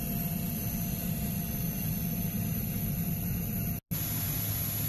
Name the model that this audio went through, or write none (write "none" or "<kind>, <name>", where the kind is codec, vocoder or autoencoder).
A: none